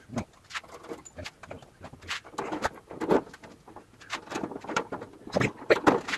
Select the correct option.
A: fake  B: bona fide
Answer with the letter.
B